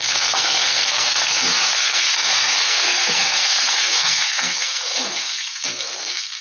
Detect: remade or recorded remade